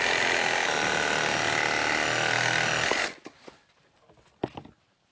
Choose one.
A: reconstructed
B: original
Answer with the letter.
B